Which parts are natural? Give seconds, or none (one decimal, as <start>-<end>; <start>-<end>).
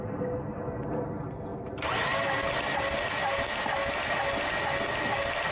0.0-5.5